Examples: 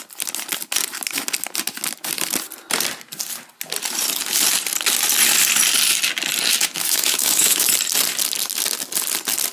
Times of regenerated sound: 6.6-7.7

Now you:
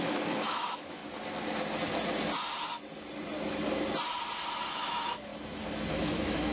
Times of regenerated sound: 0.0-1.0; 4.7-5.3; 5.9-6.5

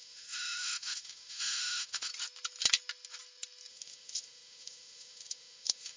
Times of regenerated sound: 0.0-2.1; 3.7-6.0

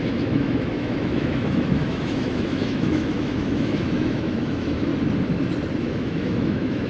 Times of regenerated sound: 0.0-4.9; 5.8-6.9

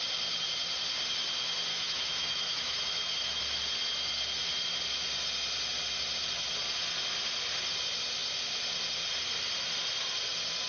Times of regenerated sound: 1.7-3.4